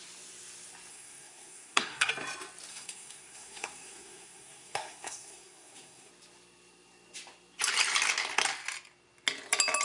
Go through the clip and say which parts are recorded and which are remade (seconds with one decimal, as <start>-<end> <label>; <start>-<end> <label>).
0.0-0.9 recorded; 0.9-2.1 remade; 2.1-2.7 recorded; 2.7-6.1 remade; 6.1-9.8 recorded